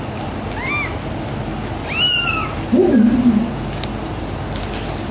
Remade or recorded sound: recorded